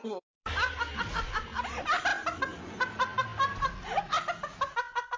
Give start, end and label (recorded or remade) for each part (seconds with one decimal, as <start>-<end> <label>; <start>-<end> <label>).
0.0-5.2 recorded